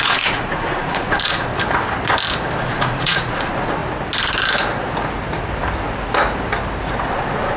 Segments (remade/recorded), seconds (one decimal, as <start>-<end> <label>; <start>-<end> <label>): 0.0-1.5 remade; 1.5-2.6 recorded; 2.6-3.8 remade; 3.8-7.1 recorded; 7.1-7.6 remade